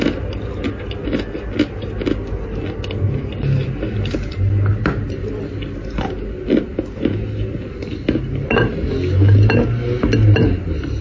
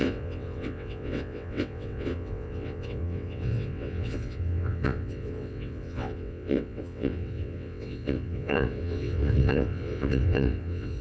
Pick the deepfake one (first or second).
second